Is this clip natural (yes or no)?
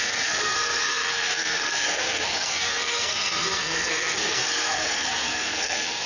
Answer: no